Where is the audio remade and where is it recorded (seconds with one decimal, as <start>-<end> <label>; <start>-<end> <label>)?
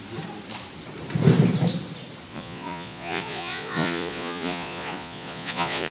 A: 0.0-2.3 recorded; 2.3-5.9 remade